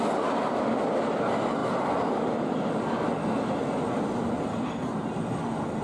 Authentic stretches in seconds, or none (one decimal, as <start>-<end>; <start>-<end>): 0.0-5.8